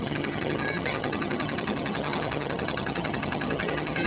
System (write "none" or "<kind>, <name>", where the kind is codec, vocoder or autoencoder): vocoder, HiFi-GAN